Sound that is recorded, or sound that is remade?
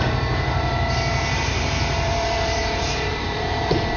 remade